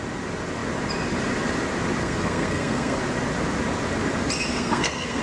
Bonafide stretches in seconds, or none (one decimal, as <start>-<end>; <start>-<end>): 0.0-2.0; 3.0-4.5